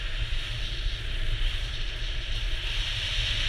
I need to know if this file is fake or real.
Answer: real